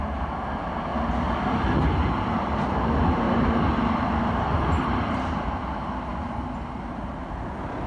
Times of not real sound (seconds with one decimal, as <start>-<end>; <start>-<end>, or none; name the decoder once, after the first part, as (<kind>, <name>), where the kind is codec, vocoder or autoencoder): 0.9-1.8 (vocoder, BigVGAN v2)